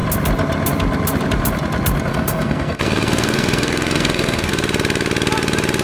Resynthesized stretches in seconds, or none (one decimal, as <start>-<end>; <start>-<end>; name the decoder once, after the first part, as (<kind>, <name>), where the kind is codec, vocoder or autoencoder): 2.1-4.5 (codec, SNAC)